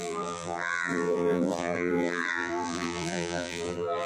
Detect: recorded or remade remade